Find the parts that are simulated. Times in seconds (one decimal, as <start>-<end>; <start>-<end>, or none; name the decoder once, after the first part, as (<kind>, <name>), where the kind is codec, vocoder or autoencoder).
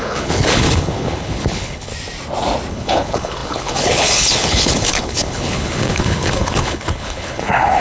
0.0-1.9 (codec, HILCodec); 2.7-7.8